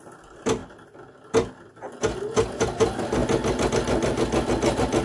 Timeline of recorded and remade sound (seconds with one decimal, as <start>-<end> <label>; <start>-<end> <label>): 0.0-5.0 recorded